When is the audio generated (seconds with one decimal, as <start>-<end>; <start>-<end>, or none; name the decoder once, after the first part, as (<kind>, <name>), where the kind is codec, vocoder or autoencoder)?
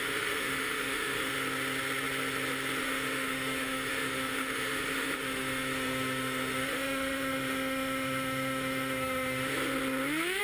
0.0-1.3 (autoencoder, DAC-VAE); 2.8-9.5